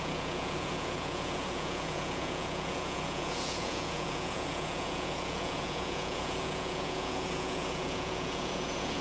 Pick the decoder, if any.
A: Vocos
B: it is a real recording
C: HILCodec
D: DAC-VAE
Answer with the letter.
A